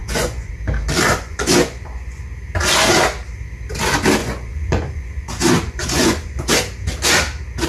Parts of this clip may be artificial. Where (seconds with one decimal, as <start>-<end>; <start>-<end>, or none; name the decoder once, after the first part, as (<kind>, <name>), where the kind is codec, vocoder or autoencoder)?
0.0-0.5 (vocoder, Vocos); 1.1-2.2; 4.2-6.5